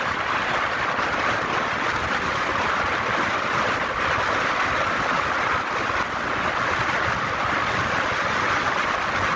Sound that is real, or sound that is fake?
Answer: real